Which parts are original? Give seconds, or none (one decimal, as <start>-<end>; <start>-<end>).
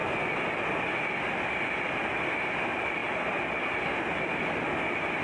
0.0-5.2